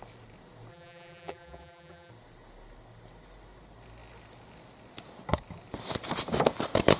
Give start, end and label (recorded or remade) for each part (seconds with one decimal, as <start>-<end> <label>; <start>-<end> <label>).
0.0-0.7 recorded; 0.7-2.1 remade; 2.1-7.0 recorded